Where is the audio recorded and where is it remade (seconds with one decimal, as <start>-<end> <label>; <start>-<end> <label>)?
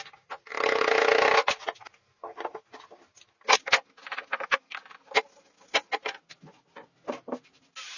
0.0-8.0 recorded